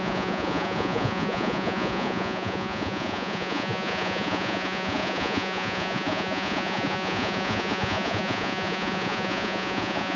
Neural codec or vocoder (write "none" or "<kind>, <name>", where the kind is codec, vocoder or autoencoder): vocoder, Vocos